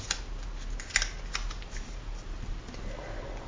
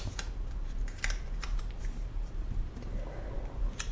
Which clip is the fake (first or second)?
second